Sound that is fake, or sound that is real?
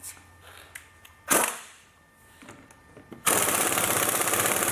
real